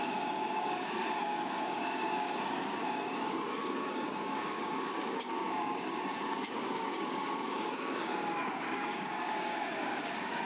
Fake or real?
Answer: fake